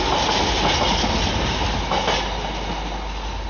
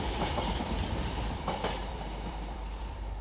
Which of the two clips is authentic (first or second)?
first